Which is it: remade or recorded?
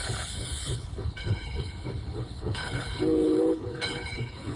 remade